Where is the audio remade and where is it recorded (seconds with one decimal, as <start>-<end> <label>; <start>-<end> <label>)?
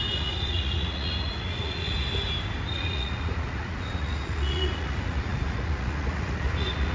0.0-2.1 remade; 2.1-2.7 recorded; 2.7-6.9 remade